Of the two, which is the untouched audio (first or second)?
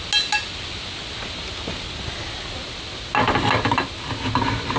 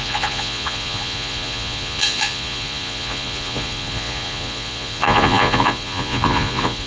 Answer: first